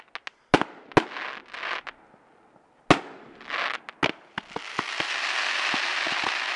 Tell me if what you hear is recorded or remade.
recorded